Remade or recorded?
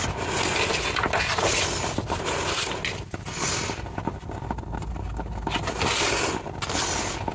recorded